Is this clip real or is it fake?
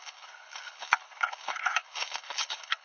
fake